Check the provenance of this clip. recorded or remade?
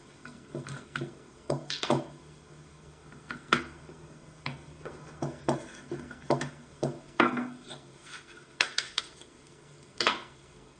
remade